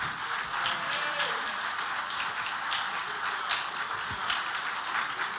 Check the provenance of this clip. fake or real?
real